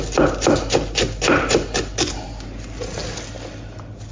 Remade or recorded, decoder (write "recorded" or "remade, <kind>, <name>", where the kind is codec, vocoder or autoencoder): recorded